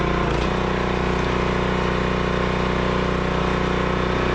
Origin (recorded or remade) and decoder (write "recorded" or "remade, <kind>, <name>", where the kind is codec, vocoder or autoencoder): recorded